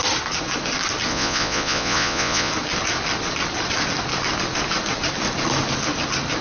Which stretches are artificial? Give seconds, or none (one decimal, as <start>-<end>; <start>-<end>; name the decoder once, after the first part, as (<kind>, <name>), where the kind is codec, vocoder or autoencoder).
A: 1.1-2.5 (vocoder, Vocos)